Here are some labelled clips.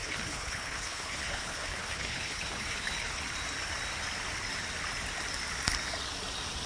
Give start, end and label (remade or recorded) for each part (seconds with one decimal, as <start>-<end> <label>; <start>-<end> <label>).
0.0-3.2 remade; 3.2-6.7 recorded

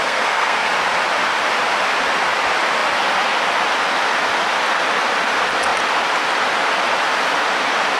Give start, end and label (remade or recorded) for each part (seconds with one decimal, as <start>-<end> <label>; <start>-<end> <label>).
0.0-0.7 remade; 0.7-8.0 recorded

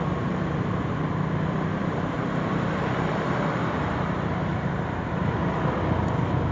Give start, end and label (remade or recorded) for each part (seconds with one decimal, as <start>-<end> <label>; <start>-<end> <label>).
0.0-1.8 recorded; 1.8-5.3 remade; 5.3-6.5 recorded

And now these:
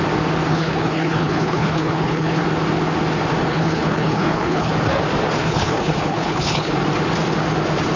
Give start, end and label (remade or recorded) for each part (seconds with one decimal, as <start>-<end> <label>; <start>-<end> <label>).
0.0-0.5 recorded; 0.5-2.4 remade; 2.4-3.5 recorded; 3.5-4.7 remade; 4.7-5.4 recorded; 5.4-6.7 remade; 6.7-8.0 recorded

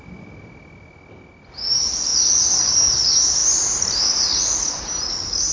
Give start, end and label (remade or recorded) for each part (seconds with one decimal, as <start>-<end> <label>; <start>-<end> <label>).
0.0-5.5 recorded

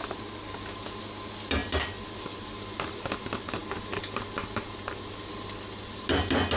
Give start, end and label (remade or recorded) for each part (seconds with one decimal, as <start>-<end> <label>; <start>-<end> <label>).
0.0-6.6 recorded

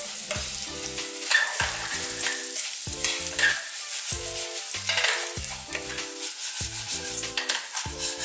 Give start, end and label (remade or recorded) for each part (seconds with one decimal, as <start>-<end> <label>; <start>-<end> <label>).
0.0-8.2 recorded